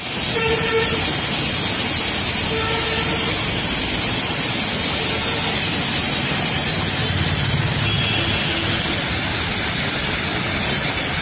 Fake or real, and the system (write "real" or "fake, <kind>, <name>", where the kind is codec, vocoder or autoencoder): real